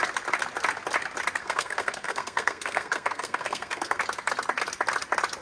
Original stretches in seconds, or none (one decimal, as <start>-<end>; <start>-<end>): 0.0-1.4; 4.0-5.4